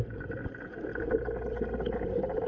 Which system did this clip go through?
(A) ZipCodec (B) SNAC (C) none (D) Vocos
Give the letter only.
C